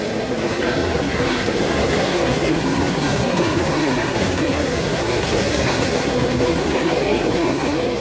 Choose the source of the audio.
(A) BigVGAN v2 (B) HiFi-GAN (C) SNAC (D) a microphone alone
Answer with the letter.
C